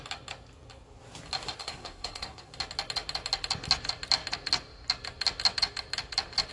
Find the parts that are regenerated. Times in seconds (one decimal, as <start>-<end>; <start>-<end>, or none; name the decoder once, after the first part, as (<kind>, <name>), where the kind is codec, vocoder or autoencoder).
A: 1.6-2.5 (codec, SNAC)